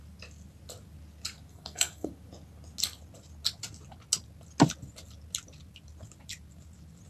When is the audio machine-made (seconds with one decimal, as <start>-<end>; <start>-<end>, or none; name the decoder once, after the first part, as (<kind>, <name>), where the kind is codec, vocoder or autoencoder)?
1.5-2.1 (codec, SNAC)